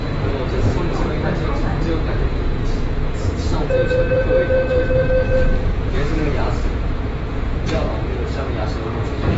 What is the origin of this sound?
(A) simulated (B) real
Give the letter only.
A